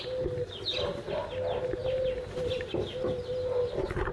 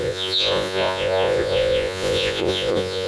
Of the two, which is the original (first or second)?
first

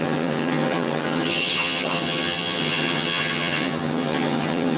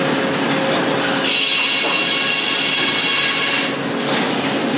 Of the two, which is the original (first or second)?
second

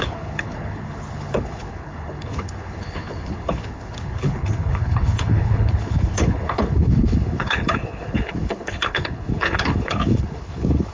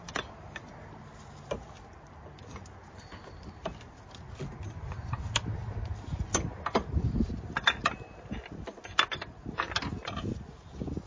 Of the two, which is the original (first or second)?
second